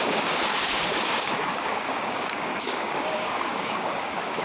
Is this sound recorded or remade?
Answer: remade